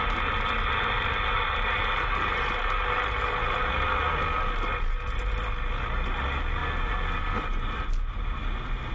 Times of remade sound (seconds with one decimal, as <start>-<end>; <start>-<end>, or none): none